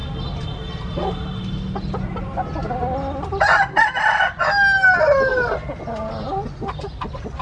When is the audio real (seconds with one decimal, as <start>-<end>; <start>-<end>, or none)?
0.0-7.4